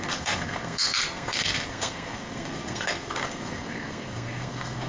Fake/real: fake